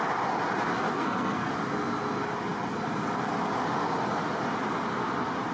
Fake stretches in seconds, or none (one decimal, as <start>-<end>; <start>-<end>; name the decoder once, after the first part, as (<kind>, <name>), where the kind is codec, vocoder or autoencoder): 0.9-1.5 (codec, SNAC)